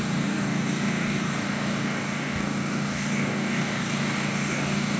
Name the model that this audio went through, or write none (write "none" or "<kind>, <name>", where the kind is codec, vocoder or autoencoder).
codec, DAC